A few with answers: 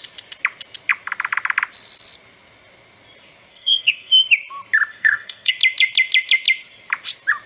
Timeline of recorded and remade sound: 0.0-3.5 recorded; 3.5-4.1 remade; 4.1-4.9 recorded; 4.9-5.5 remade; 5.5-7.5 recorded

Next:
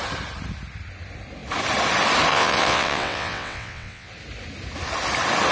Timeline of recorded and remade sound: 0.0-2.3 recorded; 2.3-4.1 remade; 4.1-5.5 recorded